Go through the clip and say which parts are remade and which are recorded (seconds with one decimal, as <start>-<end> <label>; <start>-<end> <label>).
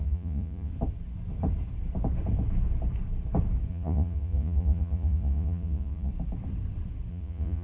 0.0-0.7 remade; 0.7-3.7 recorded; 3.7-6.1 remade; 6.1-7.1 recorded; 7.1-7.6 remade